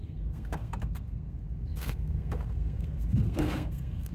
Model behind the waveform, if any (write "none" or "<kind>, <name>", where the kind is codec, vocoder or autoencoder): codec, SNAC